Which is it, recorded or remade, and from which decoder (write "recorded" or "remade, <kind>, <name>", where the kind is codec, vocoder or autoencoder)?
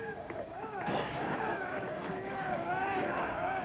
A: remade, codec, DAC